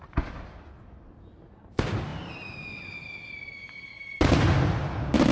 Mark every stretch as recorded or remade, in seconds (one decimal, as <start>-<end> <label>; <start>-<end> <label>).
0.0-5.3 recorded